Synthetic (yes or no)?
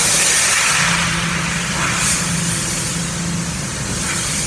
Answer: no